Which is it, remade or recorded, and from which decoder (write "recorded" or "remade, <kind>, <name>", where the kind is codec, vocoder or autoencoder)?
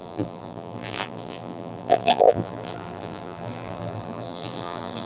remade, vocoder, BigVGAN v2